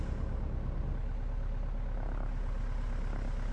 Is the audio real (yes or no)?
yes